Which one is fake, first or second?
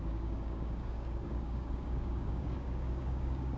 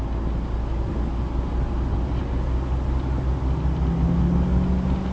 first